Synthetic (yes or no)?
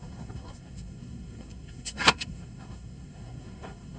yes